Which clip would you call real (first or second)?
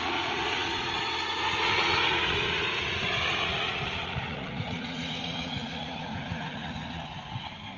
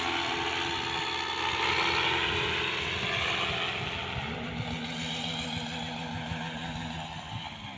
second